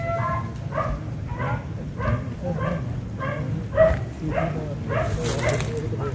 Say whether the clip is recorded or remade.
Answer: recorded